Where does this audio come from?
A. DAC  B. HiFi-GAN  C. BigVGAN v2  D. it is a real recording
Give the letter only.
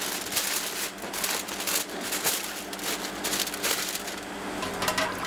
D